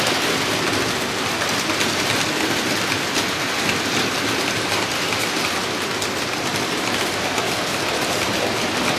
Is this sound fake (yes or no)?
no